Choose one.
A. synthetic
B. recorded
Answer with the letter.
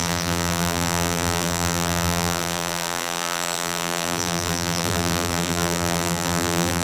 A